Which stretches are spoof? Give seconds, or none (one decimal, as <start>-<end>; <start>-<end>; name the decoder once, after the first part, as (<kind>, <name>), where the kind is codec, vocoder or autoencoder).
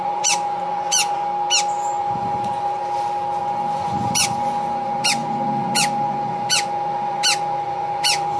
0.0-1.3 (vocoder, Vocos); 2.0-2.8; 3.4-8.4